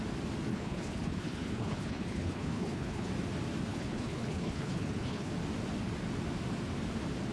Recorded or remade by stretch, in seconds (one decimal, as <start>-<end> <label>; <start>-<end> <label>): 0.0-0.5 recorded; 0.5-3.1 remade; 3.1-3.7 recorded; 3.7-5.3 remade; 5.3-7.3 recorded